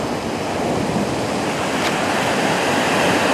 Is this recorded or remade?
recorded